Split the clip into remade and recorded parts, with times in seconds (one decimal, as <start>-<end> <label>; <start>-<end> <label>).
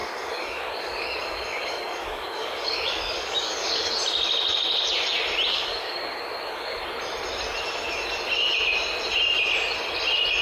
0.0-3.9 remade; 3.9-5.5 recorded; 5.5-6.8 remade; 6.8-10.4 recorded